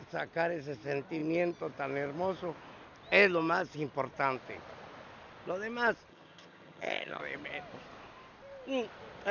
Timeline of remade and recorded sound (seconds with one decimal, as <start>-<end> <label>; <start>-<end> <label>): 0.0-6.1 recorded; 6.1-7.2 remade; 7.2-9.3 recorded